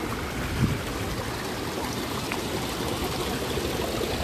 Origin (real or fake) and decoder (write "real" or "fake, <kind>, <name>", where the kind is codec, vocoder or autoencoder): real